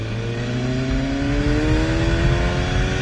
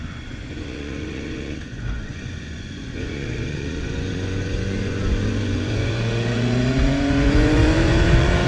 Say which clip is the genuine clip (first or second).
first